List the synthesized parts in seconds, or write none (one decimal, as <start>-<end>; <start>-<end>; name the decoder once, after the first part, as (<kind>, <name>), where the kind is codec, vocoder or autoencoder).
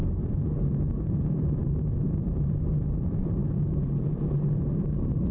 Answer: 0.0-3.4 (vocoder, BigVGAN v2); 4.0-5.3